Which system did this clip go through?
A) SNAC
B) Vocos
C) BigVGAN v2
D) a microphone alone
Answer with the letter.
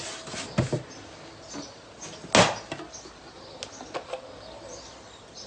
D